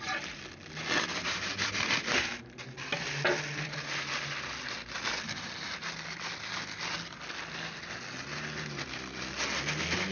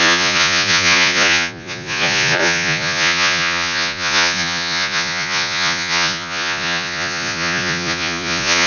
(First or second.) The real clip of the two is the first